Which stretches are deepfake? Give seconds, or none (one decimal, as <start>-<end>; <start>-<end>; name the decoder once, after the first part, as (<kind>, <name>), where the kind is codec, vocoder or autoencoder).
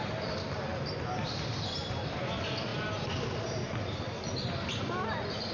none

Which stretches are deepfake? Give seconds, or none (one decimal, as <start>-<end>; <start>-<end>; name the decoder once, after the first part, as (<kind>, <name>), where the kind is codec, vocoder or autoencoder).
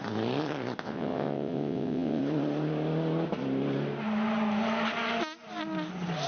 0.8-2.2 (vocoder, WaveNeXt)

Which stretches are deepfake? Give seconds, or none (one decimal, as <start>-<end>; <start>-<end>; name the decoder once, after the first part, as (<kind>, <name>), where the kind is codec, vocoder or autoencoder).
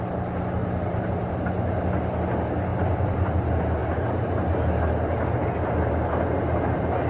0.6-1.4 (vocoder, BigVGAN v2); 2.7-3.3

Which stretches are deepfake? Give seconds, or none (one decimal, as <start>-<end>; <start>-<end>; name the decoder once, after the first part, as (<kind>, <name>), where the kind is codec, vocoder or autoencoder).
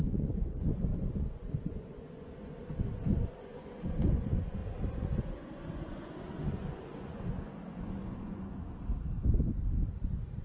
0.0-4.6 (vocoder, Vocos); 5.2-8.6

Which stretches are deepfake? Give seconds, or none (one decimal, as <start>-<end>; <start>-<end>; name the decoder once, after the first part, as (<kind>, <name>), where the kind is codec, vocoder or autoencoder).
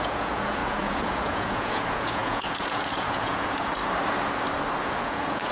0.0-3.8 (vocoder, Vocos); 4.8-5.5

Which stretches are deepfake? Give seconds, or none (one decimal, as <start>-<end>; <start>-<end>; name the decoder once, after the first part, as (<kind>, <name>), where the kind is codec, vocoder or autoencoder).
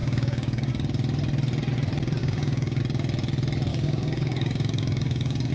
0.0-0.7 (codec, DAC); 2.2-2.8; 3.7-5.5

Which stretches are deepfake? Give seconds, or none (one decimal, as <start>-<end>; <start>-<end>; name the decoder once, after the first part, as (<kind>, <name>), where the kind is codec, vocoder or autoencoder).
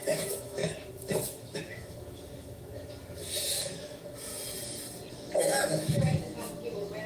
0.0-4.3 (autoencoder, DAC-VAE); 5.1-7.1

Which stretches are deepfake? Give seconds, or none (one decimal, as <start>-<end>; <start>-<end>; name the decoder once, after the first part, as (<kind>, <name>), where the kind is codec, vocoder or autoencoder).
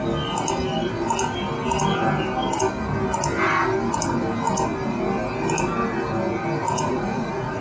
6.9-7.6 (vocoder, Vocos)